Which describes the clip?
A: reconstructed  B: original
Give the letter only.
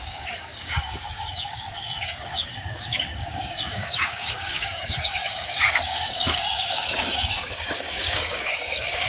A